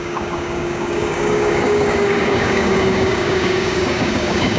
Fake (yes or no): yes